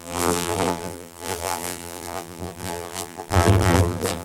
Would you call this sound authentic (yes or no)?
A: no